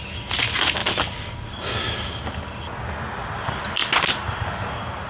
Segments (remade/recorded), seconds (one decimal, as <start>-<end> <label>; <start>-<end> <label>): 0.0-5.1 recorded